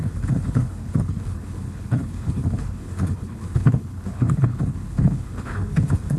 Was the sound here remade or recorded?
remade